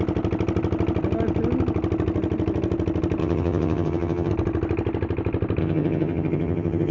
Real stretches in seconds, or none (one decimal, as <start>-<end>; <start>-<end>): 0.0-3.2; 4.3-5.6